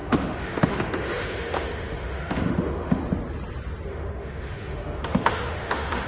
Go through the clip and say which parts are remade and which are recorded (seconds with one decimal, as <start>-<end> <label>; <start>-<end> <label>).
0.0-3.0 remade; 3.0-3.9 recorded; 3.9-6.1 remade